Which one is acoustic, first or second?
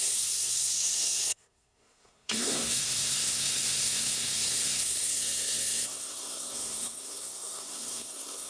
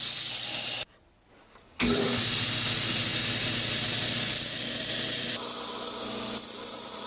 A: second